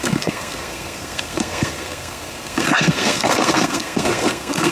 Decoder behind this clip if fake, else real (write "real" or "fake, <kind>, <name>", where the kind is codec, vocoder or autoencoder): fake, codec, SNAC